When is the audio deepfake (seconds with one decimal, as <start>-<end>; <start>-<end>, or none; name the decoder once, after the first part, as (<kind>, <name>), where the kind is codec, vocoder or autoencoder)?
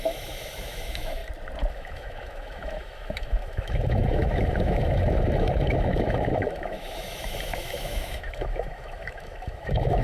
0.0-1.2 (autoencoder, DAC-VAE); 1.7-10.0